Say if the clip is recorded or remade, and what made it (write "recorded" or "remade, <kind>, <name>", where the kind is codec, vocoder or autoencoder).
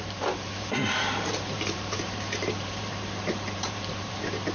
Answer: remade, vocoder, BigVGAN v2